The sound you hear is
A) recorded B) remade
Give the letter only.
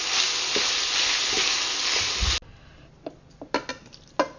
A